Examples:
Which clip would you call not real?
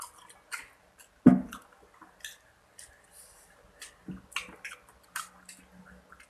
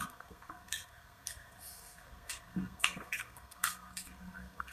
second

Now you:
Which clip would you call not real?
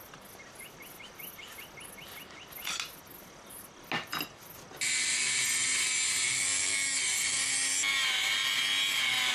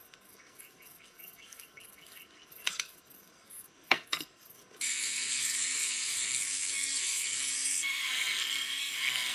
second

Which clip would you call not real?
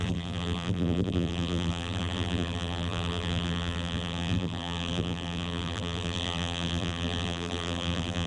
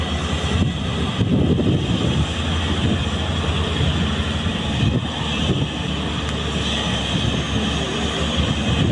first